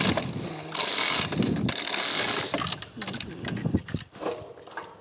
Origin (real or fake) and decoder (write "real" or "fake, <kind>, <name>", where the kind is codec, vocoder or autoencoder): real